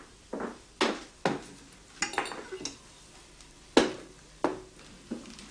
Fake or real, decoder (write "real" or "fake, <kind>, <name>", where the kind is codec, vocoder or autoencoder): real